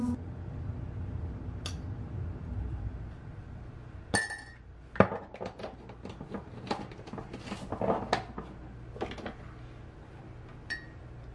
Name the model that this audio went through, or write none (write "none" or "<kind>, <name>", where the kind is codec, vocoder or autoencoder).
none